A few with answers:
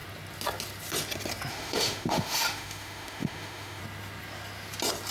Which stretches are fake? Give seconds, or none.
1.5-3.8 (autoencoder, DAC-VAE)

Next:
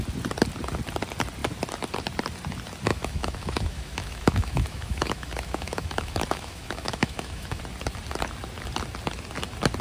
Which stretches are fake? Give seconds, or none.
2.9-7.6 (autoencoder, DAC-VAE)

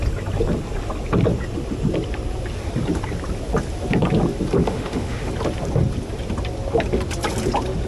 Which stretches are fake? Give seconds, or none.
4.6-5.3 (autoencoder, DAC-VAE)